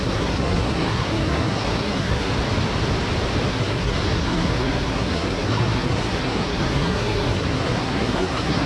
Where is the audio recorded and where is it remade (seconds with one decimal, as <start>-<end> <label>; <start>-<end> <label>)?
0.0-2.3 remade; 2.3-3.5 recorded; 3.5-8.7 remade